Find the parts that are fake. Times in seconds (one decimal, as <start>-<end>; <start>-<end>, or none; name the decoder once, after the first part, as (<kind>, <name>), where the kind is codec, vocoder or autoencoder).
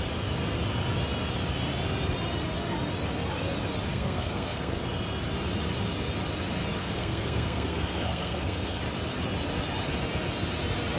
3.9-4.8 (codec, SNAC); 6.8-8.8